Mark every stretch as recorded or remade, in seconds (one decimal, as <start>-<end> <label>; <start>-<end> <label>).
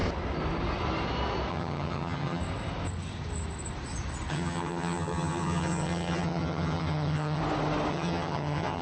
0.0-1.5 recorded; 1.5-2.4 remade; 2.4-4.3 recorded; 4.3-7.4 remade; 7.4-7.9 recorded; 7.9-8.8 remade